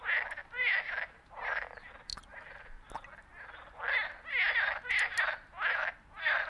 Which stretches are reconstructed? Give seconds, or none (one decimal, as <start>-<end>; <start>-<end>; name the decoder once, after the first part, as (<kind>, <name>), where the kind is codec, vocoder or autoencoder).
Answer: none